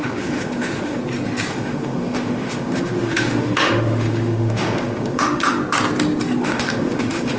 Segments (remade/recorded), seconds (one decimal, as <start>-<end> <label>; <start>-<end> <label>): 0.0-1.0 remade; 1.0-1.5 recorded; 1.5-5.6 remade; 5.6-6.4 recorded; 6.4-7.4 remade